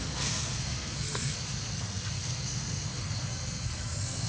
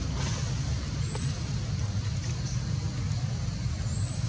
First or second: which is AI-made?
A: first